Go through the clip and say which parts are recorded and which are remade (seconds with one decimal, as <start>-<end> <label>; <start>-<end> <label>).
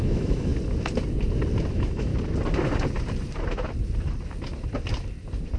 0.0-0.5 remade; 0.5-1.7 recorded; 1.7-2.1 remade; 2.1-5.6 recorded